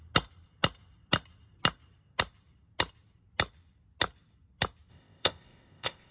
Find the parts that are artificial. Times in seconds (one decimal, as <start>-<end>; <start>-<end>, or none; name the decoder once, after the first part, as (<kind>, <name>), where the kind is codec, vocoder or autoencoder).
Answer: 4.9-6.1 (codec, ZipCodec)